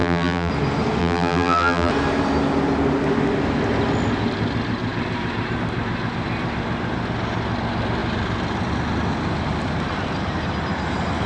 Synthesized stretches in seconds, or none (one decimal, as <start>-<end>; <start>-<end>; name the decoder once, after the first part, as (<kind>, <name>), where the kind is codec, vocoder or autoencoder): 0.0-0.5 (vocoder, BigVGAN v2); 1.0-1.9